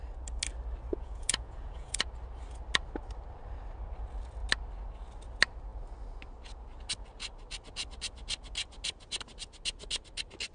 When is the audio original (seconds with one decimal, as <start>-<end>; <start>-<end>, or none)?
0.0-0.9; 2.1-10.5